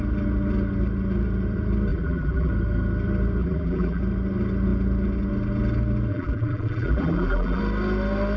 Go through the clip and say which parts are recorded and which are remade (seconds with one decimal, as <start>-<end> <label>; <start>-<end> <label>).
0.0-1.9 recorded; 1.9-2.5 remade; 2.5-3.4 recorded; 3.4-4.0 remade; 4.0-6.1 recorded; 6.1-7.6 remade; 7.6-8.4 recorded